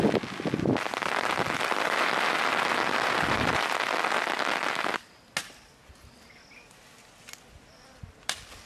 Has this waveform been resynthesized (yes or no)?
no